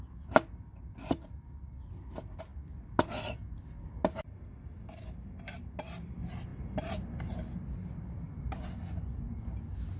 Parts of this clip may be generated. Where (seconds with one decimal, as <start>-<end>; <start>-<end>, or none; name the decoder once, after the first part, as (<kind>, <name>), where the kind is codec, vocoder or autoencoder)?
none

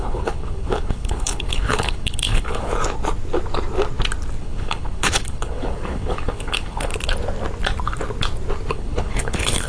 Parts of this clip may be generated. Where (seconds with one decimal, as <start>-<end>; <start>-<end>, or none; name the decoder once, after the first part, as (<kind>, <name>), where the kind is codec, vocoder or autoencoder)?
0.0-2.7 (codec, HILCodec); 4.4-6.9; 8.7-9.7

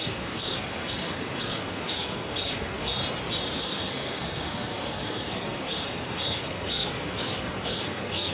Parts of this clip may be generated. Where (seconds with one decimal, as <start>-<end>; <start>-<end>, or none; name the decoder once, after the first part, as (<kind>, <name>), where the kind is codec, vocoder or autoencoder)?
0.0-3.0 (codec, SNAC); 3.6-8.3